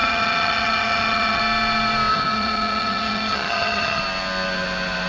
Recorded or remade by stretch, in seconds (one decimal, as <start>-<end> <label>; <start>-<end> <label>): 0.0-1.4 remade; 1.4-2.1 recorded; 2.1-4.0 remade; 4.0-5.1 recorded